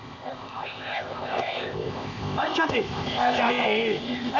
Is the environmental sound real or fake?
fake